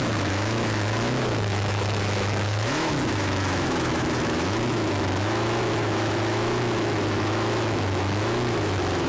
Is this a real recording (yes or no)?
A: no